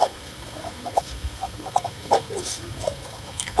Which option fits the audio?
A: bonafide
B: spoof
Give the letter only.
B